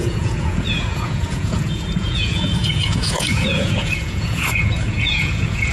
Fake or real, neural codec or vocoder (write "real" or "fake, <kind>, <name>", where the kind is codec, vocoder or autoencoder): fake, vocoder, Vocos